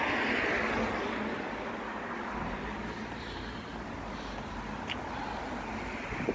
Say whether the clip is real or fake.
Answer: real